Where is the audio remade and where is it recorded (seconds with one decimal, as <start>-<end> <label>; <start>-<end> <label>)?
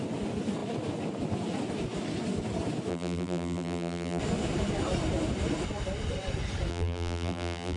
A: 0.0-2.9 recorded; 2.9-4.2 remade; 4.2-6.7 recorded; 6.7-7.8 remade